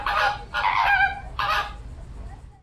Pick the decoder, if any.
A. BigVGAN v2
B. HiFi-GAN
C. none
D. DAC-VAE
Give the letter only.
A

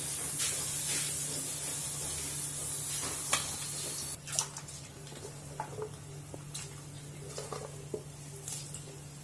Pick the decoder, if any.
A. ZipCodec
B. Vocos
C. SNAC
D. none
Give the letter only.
D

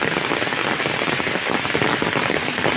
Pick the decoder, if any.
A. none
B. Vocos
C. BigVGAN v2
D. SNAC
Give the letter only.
A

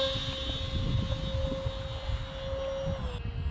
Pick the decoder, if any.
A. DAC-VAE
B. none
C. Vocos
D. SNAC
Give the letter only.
B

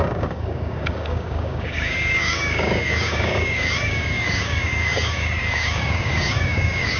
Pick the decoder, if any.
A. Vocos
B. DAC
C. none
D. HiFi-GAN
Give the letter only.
B